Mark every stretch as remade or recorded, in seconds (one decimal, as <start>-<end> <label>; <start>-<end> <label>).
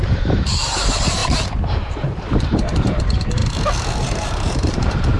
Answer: 0.0-3.4 remade; 3.4-4.0 recorded; 4.0-5.2 remade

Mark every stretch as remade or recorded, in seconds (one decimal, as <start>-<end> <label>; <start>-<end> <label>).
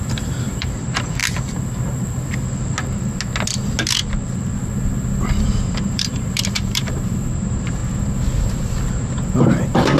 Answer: 0.0-1.2 remade; 1.2-5.4 recorded; 5.4-7.8 remade; 7.8-8.9 recorded; 8.9-10.0 remade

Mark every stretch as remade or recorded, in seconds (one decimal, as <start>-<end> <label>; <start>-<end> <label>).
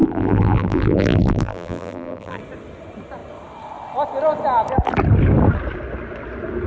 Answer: 0.0-2.4 remade; 2.4-6.7 recorded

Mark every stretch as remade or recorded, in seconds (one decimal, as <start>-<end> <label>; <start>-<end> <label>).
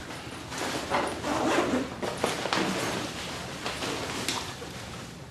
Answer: 0.0-3.2 recorded; 3.2-5.3 remade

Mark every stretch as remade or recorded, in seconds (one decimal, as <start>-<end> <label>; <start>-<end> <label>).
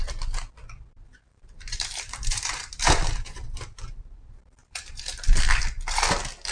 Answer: 0.0-1.1 recorded; 1.1-5.0 remade; 5.0-6.5 recorded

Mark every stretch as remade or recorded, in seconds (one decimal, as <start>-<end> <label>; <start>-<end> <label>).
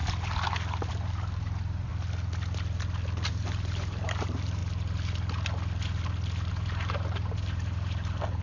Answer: 0.0-0.9 recorded; 0.9-1.9 remade; 1.9-3.3 recorded; 3.3-4.6 remade; 4.6-6.5 recorded; 6.5-8.4 remade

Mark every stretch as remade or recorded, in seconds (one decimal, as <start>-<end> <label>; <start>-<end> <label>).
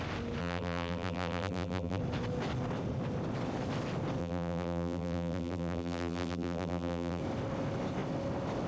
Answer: 0.0-0.4 recorded; 0.4-2.0 remade; 2.0-4.2 recorded; 4.2-7.2 remade; 7.2-8.7 recorded